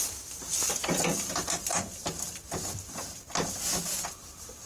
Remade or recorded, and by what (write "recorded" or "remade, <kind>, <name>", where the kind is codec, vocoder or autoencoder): recorded